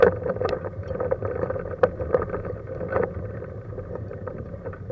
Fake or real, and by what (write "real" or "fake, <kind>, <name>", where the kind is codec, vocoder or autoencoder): fake, vocoder, BigVGAN v2